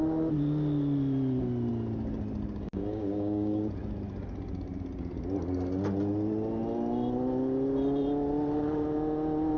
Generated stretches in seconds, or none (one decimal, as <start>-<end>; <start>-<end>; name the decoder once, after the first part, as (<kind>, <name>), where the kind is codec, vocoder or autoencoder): 2.8-3.6 (codec, DAC)